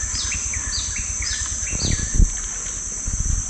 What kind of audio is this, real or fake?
real